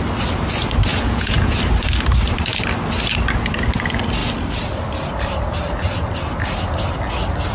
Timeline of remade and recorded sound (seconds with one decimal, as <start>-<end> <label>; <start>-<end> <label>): 0.0-0.9 recorded; 0.9-1.6 remade; 1.6-7.5 recorded

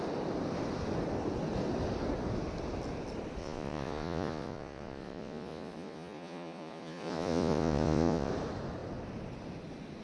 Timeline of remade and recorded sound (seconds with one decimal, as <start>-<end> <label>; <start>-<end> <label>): 0.0-3.4 recorded; 3.4-8.3 remade; 8.3-10.0 recorded

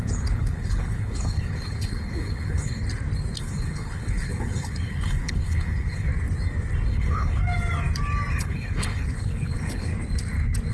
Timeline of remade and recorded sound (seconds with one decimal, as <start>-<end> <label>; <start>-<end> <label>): 0.0-2.8 remade; 2.8-3.4 recorded; 3.4-6.1 remade; 6.1-6.9 recorded; 6.9-7.4 remade; 7.4-8.3 recorded; 8.3-9.9 remade; 9.9-10.7 recorded

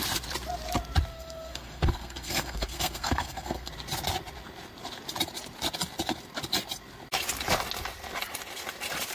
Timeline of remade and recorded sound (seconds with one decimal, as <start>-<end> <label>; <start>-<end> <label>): 0.0-1.1 recorded; 1.1-3.7 remade; 3.7-9.1 recorded

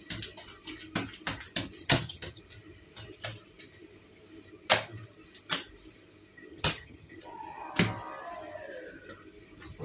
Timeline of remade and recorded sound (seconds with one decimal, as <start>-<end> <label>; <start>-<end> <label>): 0.0-1.8 recorded; 1.8-2.4 remade; 2.4-6.5 recorded; 6.5-7.2 remade; 7.2-9.8 recorded

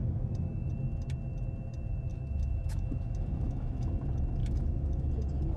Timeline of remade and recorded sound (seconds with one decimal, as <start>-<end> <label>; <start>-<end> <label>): 0.0-0.7 remade; 0.7-2.1 recorded; 2.1-3.9 remade; 3.9-4.4 recorded; 4.4-5.1 remade; 5.1-5.6 recorded

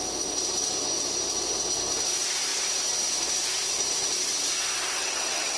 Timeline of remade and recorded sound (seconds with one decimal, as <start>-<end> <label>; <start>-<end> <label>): 0.0-5.0 recorded; 5.0-5.6 remade

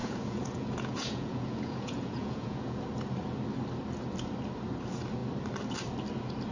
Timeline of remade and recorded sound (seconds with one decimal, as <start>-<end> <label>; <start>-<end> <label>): 0.0-2.8 remade; 2.8-6.5 recorded